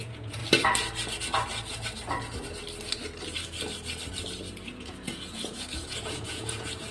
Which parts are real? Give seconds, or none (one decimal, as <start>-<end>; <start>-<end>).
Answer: 0.4-4.5